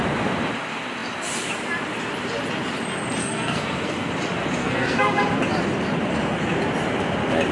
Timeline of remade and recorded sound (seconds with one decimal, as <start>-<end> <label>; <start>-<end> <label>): 0.0-3.2 recorded; 3.2-4.1 remade; 4.1-4.6 recorded; 4.6-5.2 remade; 5.2-7.5 recorded